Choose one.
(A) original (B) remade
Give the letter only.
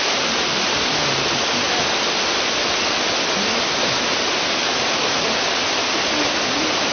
A